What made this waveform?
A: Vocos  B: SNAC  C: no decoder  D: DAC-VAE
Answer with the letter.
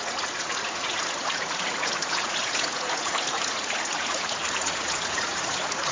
A